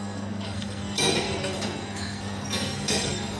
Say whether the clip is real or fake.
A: fake